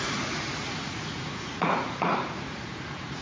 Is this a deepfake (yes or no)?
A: yes